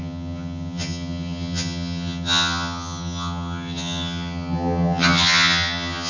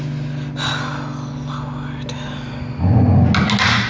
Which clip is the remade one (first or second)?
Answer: first